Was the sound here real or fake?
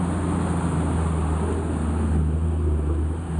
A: real